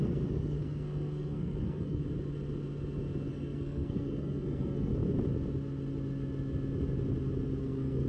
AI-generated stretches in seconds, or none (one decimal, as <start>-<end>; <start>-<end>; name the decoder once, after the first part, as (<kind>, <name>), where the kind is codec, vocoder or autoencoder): 0.0-2.0 (codec, SNAC); 3.3-4.9; 7.6-8.1